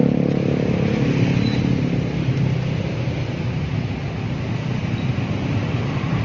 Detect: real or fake real